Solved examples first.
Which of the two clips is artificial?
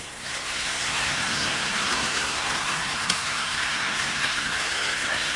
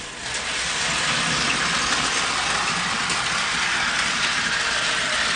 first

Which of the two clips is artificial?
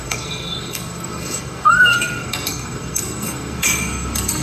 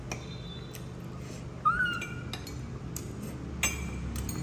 first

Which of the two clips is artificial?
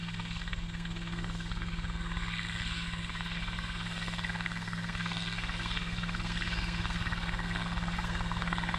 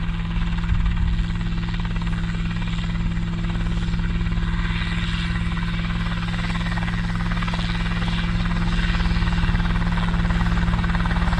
first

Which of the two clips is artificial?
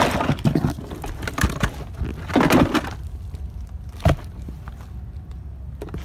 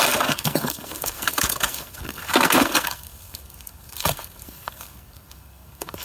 second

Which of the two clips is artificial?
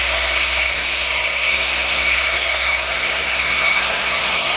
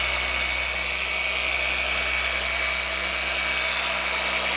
first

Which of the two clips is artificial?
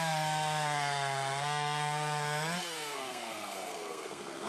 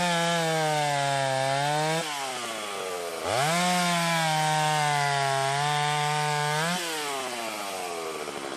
first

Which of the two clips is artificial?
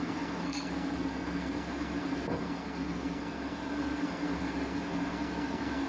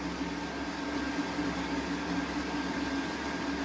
first